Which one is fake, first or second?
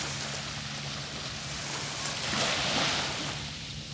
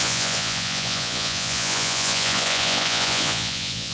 second